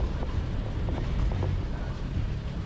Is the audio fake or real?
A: real